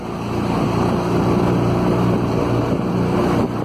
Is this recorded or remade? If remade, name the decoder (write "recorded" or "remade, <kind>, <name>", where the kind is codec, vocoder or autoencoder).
recorded